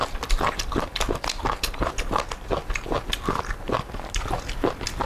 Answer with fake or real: real